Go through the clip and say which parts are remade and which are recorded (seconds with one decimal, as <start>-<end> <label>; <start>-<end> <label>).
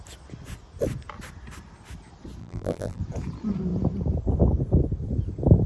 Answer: 0.0-2.4 recorded; 2.4-3.0 remade; 3.0-5.7 recorded